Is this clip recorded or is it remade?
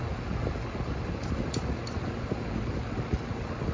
recorded